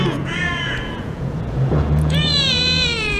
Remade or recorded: remade